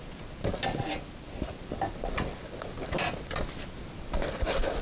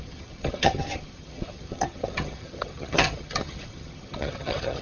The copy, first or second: second